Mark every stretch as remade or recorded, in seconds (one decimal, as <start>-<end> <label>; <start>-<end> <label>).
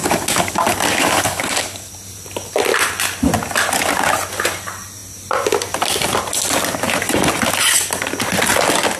0.0-1.9 remade; 1.9-9.0 recorded